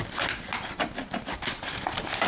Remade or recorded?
recorded